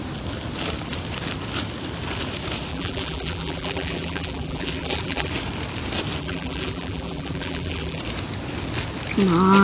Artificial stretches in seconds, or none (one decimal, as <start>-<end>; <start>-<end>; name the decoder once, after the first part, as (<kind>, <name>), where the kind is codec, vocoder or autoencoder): 2.7-5.3 (vocoder, BigVGAN v2); 6.2-8.0